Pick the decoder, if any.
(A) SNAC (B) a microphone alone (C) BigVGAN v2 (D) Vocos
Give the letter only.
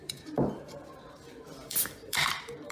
C